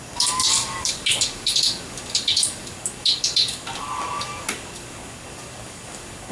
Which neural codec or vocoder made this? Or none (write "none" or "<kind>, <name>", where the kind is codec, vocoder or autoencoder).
codec, DAC